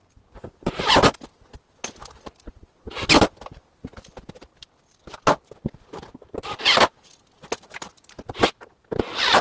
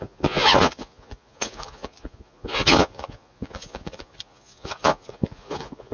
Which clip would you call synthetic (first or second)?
second